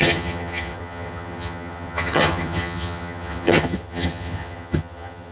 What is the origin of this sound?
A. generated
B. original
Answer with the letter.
A